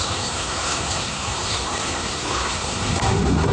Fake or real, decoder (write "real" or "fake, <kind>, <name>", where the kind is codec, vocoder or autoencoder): fake, codec, SNAC